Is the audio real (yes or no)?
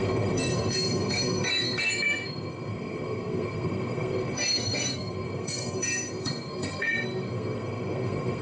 no